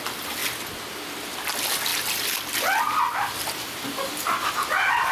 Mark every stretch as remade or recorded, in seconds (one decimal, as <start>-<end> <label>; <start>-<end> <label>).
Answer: 0.0-5.1 recorded